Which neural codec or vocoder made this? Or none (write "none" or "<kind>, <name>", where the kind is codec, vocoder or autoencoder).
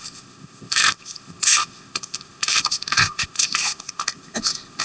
codec, ZipCodec